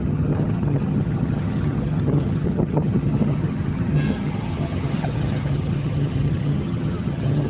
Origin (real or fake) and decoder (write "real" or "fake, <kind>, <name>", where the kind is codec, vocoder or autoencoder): fake, vocoder, HiFi-GAN